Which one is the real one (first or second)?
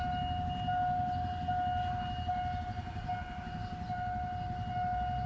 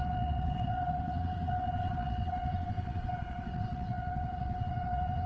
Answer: first